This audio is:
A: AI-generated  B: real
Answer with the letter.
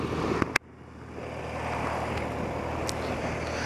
B